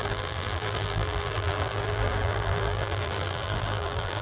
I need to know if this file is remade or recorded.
remade